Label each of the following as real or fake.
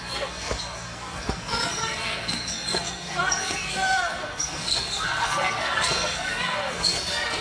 fake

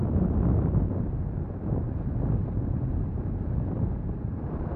real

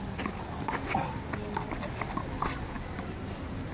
real